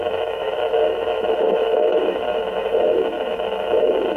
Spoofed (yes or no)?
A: yes